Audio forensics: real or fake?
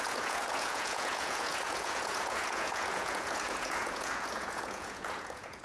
fake